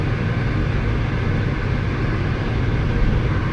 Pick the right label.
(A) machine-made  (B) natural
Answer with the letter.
B